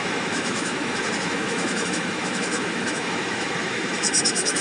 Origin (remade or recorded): remade